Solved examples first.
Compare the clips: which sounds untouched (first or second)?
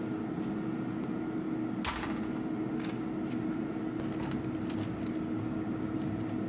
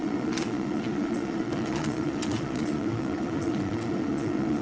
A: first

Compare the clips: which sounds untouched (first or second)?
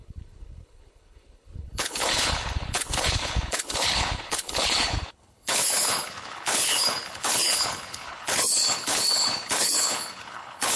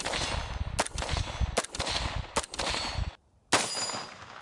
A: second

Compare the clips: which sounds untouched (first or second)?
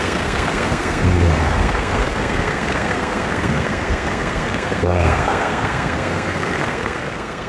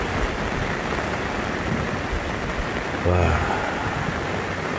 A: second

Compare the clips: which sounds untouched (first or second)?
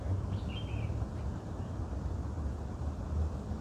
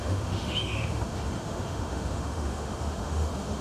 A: first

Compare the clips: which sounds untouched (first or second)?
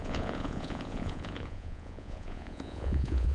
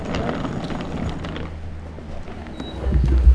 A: second